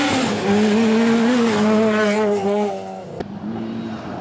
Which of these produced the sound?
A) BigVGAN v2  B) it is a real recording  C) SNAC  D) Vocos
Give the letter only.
B